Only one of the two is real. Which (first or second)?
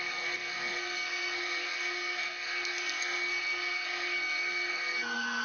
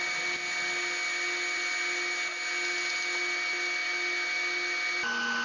second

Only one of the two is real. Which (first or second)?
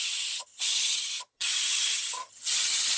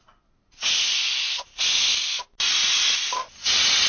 second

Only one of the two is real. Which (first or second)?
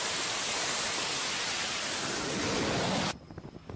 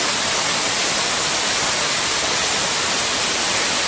first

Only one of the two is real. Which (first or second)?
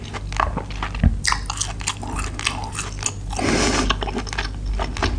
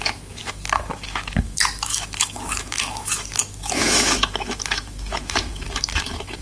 first